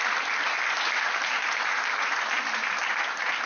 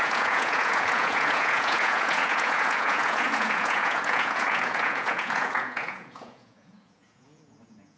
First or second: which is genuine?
first